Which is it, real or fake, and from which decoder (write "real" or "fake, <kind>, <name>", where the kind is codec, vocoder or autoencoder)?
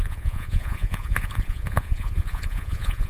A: fake, vocoder, Vocos